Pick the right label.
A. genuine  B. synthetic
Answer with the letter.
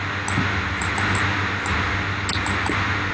A